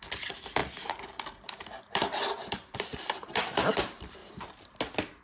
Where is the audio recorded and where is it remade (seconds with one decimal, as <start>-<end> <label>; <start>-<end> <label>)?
0.0-4.2 remade; 4.2-5.2 recorded